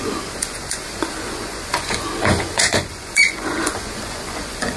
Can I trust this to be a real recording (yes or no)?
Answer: no